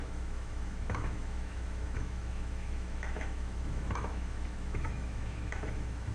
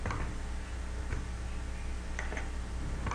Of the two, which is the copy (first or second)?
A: first